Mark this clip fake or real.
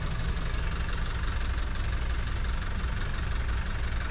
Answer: real